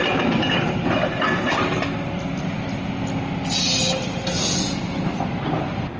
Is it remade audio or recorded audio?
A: recorded